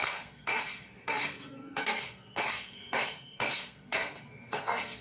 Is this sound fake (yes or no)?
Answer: yes